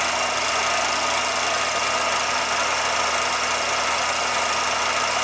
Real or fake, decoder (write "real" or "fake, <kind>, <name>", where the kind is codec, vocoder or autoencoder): real